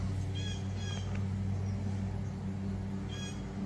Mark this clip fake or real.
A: real